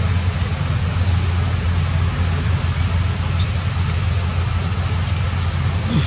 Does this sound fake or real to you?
real